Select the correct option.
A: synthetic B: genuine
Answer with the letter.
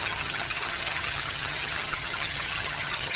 A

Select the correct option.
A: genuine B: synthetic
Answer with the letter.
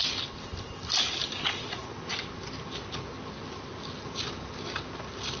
A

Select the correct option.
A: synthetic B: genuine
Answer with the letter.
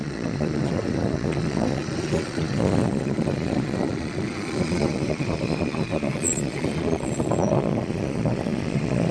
A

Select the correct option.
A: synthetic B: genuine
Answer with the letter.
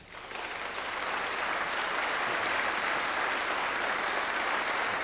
B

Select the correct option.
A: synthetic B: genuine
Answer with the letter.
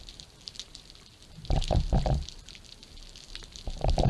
B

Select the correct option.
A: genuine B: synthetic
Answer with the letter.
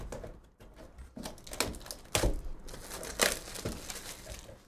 A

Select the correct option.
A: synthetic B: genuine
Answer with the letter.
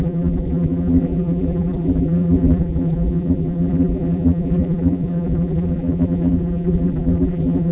A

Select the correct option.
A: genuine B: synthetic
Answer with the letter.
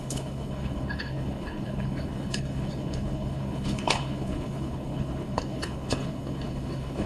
B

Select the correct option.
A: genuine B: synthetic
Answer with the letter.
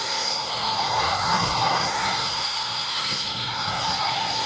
B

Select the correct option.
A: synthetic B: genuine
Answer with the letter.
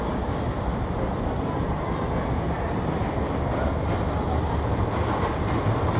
B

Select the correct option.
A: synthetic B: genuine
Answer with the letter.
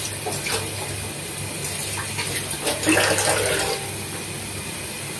B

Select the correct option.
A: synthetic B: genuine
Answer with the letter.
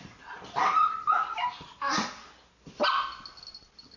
B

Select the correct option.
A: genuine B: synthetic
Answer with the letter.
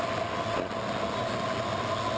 A